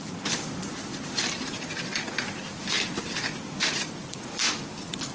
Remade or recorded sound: remade